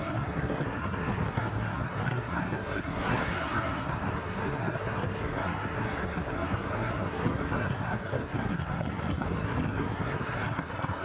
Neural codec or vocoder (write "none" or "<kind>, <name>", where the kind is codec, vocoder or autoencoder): codec, SNAC